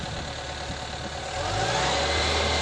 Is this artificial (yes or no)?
no